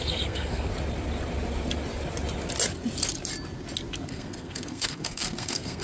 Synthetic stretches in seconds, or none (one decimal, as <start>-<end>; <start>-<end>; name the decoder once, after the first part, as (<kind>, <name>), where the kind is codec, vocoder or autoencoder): 0.0-0.7 (codec, SNAC); 4.1-5.8